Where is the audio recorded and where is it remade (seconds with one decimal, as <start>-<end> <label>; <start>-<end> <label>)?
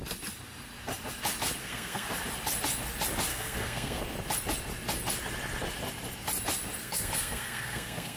0.0-1.6 recorded; 1.6-2.1 remade; 2.1-3.3 recorded; 3.3-4.0 remade; 4.0-6.8 recorded; 6.8-8.2 remade